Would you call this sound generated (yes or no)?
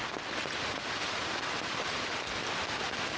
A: no